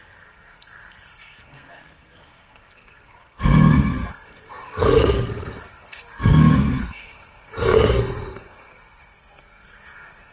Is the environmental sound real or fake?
fake